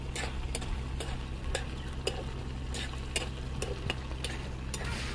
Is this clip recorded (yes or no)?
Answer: yes